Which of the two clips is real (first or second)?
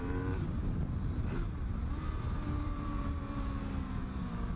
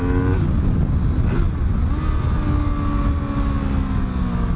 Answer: second